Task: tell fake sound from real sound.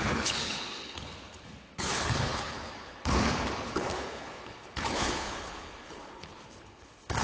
fake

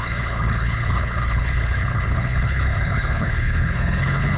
fake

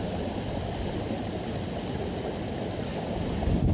real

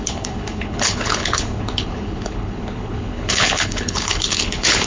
fake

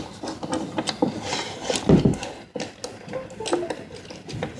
real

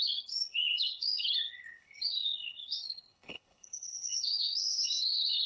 fake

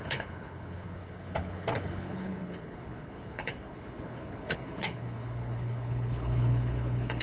fake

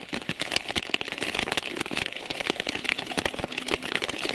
fake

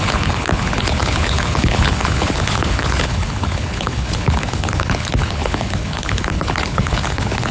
fake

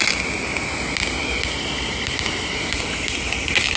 real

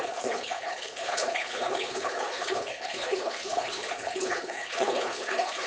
fake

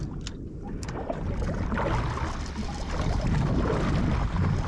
real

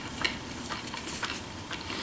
real